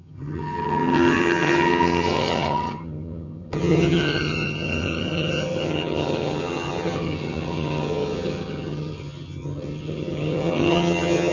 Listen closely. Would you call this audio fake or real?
fake